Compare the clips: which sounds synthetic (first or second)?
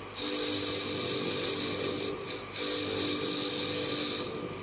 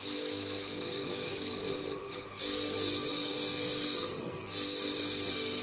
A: second